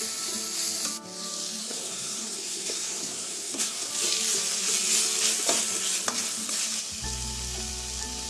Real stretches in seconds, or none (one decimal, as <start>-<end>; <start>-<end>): 0.0-1.6; 3.9-8.3